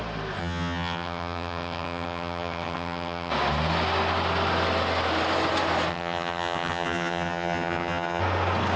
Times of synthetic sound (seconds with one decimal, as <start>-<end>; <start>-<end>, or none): 0.4-3.3; 5.9-8.2